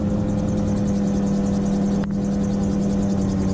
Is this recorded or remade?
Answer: recorded